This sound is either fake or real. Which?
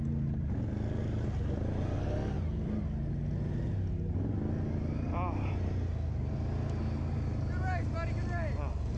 real